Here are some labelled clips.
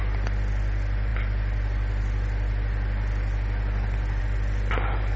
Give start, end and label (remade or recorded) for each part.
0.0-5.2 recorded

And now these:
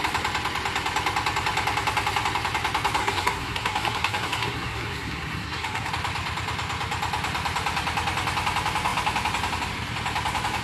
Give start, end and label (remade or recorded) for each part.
0.0-3.0 recorded; 3.0-5.9 remade; 5.9-10.6 recorded

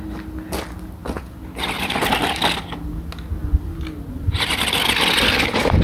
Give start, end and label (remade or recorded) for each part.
0.0-5.8 recorded

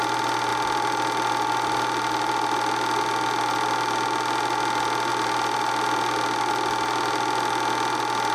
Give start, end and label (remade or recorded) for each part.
0.0-8.3 recorded

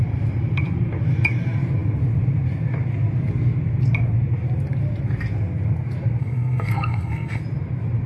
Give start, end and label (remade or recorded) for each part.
0.0-6.2 recorded; 6.2-7.4 remade; 7.4-8.1 recorded

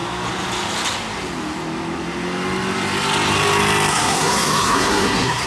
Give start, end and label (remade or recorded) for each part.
0.0-3.9 recorded; 3.9-5.5 remade

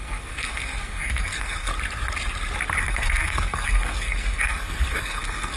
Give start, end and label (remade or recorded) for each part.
0.0-1.7 remade; 1.7-2.8 recorded; 2.8-5.6 remade